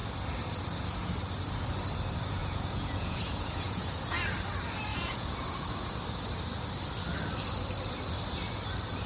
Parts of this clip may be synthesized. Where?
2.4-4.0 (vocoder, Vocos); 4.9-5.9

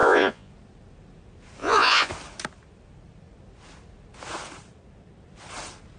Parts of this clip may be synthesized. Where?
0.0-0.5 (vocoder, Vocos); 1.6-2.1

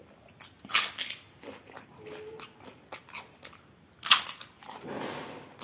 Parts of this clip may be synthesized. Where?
none

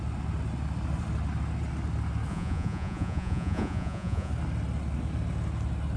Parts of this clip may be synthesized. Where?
2.3-4.3 (vocoder, Vocos)

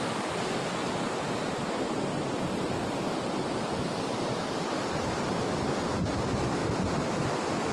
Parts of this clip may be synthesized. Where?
none

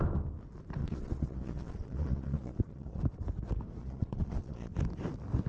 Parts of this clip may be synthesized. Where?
0.8-3.0 (vocoder, Vocos); 3.8-4.7